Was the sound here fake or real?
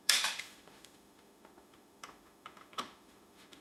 fake